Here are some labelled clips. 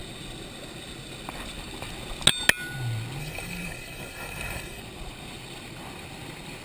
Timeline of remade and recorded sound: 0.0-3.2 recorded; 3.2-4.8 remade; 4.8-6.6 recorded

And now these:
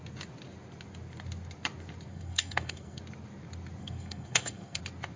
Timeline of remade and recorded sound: 0.0-2.1 recorded; 2.1-3.0 remade; 3.0-3.8 recorded; 3.8-4.8 remade; 4.8-5.2 recorded

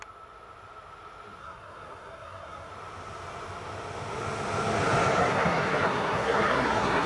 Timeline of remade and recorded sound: 0.0-1.4 recorded; 1.4-2.7 remade; 2.7-5.2 recorded; 5.2-7.1 remade